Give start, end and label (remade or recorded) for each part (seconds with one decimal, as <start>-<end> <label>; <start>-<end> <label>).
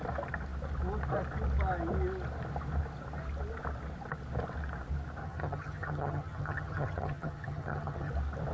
0.0-5.2 recorded; 5.2-8.1 remade; 8.1-8.5 recorded